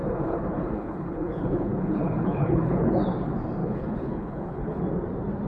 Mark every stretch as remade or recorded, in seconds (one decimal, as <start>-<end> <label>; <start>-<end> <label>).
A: 0.0-3.0 remade; 3.0-3.6 recorded; 3.6-4.8 remade; 4.8-5.5 recorded